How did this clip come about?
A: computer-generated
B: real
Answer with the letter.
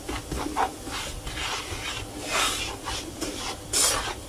B